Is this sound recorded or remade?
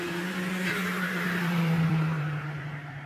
remade